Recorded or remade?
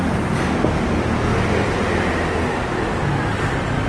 recorded